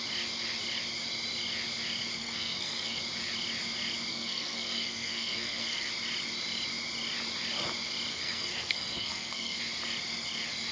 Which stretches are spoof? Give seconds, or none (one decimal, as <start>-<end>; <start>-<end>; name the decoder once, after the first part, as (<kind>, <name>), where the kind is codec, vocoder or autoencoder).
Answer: 2.2-3.0 (codec, SNAC); 4.1-5.9; 8.1-9.6